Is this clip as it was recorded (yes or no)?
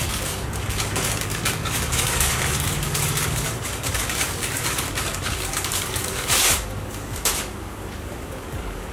no